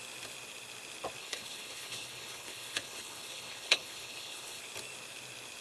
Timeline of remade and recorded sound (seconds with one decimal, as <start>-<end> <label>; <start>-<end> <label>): 0.0-1.2 recorded; 1.2-4.6 remade; 4.6-5.6 recorded